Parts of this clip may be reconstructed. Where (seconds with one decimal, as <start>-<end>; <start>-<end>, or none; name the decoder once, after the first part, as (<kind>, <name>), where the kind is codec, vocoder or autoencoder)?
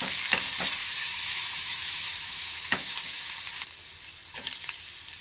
0.8-3.1 (autoencoder, DAC-VAE)